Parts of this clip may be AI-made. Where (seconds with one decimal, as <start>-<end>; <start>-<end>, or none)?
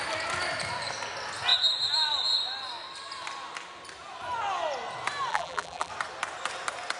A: 5.3-5.9